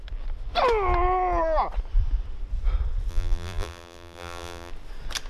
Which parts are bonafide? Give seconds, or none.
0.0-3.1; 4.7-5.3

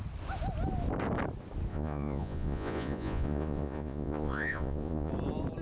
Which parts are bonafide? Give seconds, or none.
0.0-1.7; 5.1-5.6

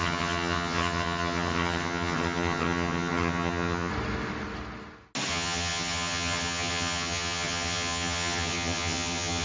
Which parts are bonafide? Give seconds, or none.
3.9-5.3

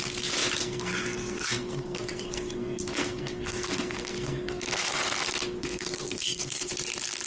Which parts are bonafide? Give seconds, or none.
0.0-0.6; 4.9-5.6; 6.7-7.3

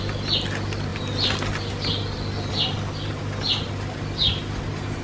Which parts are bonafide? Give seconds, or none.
0.0-5.0

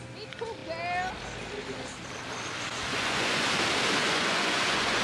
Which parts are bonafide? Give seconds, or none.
0.0-2.9; 3.5-4.0

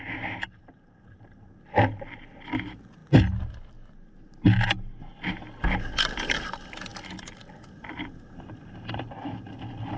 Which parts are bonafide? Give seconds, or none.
0.0-10.0